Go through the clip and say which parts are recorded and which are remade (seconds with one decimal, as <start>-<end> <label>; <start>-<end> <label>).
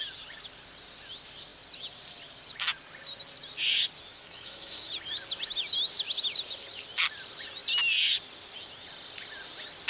0.0-4.1 recorded; 4.1-4.9 remade; 4.9-9.9 recorded